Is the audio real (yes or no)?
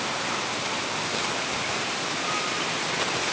yes